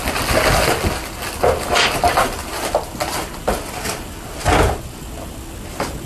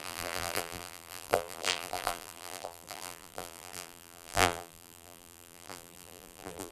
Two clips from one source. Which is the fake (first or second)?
second